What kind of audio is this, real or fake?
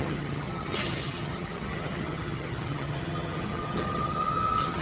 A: fake